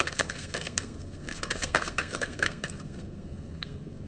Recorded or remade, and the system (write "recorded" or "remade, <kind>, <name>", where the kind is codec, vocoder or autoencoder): remade, codec, SNAC